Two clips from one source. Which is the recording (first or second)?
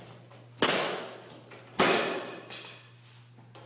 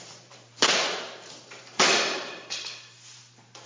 first